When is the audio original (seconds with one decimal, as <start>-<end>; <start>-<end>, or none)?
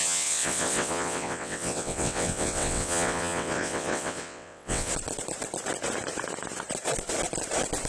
4.9-7.9